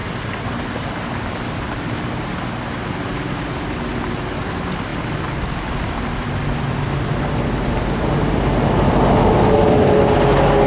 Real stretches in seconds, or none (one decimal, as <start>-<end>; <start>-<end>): 0.0-10.7